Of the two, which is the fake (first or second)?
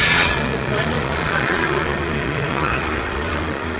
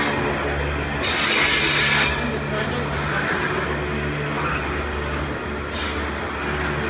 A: first